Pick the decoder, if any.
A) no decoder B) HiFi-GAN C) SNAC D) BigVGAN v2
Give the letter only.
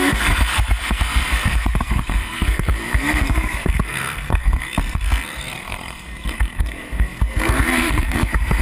C